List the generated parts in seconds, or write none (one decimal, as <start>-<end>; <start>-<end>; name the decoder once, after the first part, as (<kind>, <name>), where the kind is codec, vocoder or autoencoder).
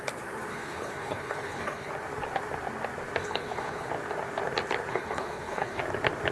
0.5-1.9 (codec, HILCodec); 3.2-3.9; 4.9-5.8